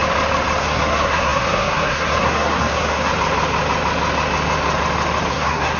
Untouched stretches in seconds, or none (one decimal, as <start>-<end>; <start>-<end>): 0.0-0.6; 3.1-5.3